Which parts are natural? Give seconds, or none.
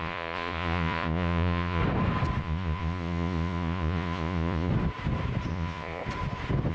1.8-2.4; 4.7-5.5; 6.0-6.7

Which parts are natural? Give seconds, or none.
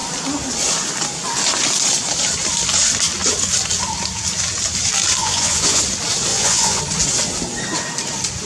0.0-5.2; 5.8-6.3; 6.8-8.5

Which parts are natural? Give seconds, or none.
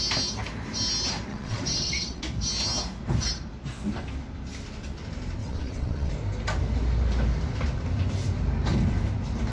0.0-1.3; 2.2-5.4; 6.1-9.5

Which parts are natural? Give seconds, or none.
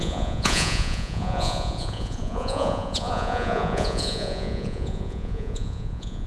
none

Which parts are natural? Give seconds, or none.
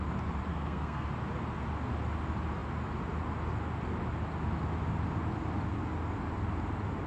0.0-0.5; 1.1-7.1